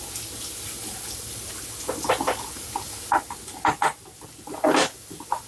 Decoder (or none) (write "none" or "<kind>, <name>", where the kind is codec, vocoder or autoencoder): none